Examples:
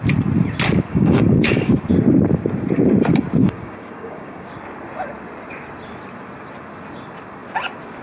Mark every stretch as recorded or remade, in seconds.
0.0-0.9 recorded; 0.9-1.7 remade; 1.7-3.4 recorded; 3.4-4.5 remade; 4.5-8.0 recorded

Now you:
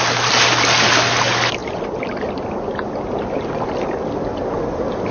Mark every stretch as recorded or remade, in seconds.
0.0-5.1 recorded

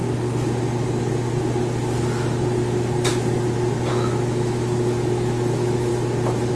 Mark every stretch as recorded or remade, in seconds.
0.0-3.9 recorded; 3.9-5.9 remade; 5.9-6.5 recorded

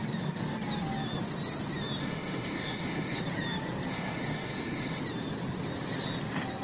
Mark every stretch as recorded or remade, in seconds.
0.0-2.0 recorded; 2.0-3.2 remade; 3.2-3.9 recorded; 3.9-5.0 remade; 5.0-6.6 recorded

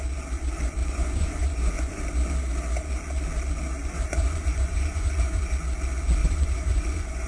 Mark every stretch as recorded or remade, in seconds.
0.0-0.8 recorded; 0.8-2.0 remade; 2.0-3.8 recorded; 3.8-5.4 remade; 5.4-6.2 recorded; 6.2-7.3 remade